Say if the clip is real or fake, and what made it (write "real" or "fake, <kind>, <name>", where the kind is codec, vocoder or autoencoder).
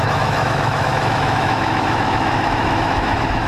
fake, autoencoder, DAC-VAE